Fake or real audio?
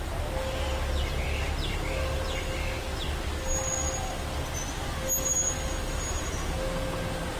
real